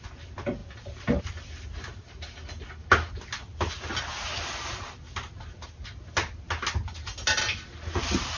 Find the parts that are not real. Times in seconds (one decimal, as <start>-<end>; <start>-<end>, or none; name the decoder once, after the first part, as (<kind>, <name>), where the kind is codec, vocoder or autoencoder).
none